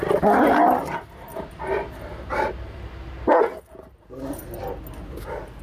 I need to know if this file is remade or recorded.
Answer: recorded